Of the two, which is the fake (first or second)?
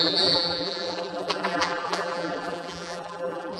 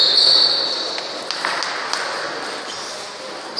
first